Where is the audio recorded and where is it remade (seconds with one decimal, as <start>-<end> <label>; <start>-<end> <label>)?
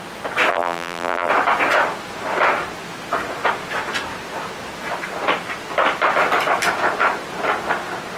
0.0-0.5 recorded; 0.5-1.3 remade; 1.3-8.2 recorded